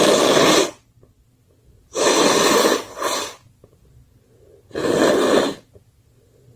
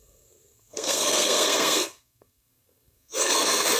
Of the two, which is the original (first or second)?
first